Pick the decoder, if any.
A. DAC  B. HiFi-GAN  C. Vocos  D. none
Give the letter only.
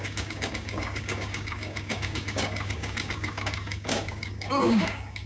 A